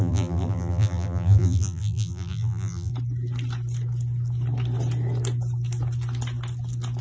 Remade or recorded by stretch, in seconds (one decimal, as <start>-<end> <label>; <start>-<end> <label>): 0.0-2.9 remade; 2.9-7.0 recorded